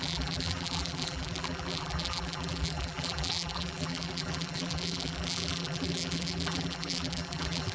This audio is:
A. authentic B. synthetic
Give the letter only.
B